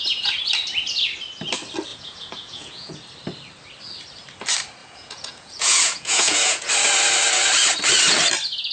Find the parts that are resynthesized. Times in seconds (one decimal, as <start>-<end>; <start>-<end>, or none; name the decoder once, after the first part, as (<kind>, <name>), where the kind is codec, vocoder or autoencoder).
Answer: 1.9-2.9 (vocoder, Vocos); 4.8-6.7